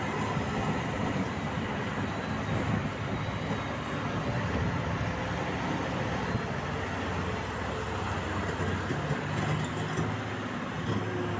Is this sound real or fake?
real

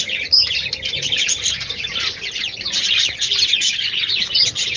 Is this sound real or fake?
real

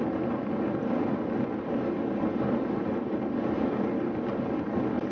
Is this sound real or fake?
real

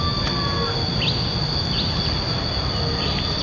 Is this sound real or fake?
real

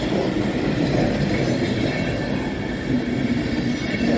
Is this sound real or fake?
real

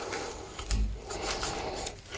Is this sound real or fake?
real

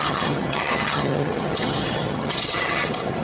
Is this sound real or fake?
fake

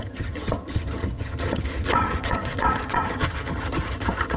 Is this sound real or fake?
fake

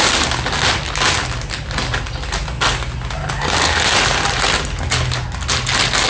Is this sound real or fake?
real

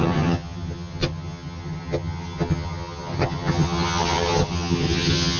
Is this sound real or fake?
fake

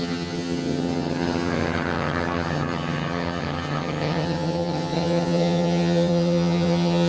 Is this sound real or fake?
fake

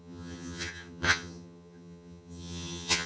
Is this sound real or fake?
fake